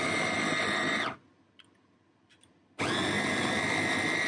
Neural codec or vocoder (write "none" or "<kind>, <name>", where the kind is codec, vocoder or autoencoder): none